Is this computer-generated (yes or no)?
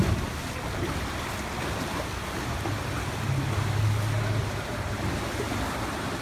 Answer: no